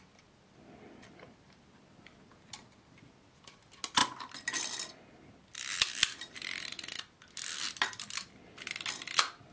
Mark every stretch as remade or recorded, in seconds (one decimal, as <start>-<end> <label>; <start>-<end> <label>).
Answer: 0.0-9.5 recorded